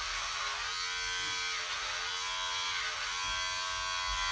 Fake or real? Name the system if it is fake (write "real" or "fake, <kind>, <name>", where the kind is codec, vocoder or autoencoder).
real